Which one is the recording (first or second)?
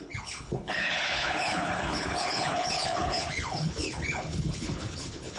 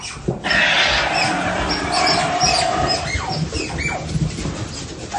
second